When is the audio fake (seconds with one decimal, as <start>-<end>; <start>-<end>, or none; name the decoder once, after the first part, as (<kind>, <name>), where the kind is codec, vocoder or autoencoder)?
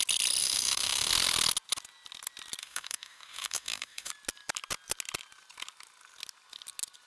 0.4-1.1 (autoencoder, DAC-VAE); 2.6-4.1